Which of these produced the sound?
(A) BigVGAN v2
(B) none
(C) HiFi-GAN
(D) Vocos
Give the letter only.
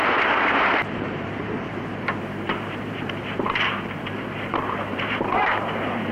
A